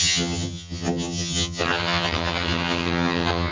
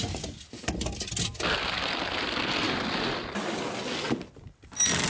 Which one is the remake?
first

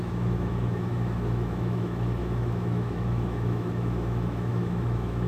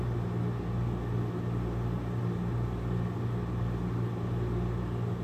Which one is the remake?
first